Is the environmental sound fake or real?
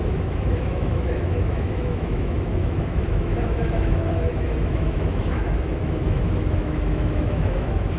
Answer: fake